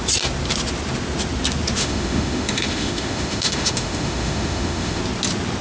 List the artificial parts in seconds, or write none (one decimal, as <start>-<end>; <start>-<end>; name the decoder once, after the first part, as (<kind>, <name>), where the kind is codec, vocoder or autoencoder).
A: 1.8-5.0 (autoencoder, DAC-VAE)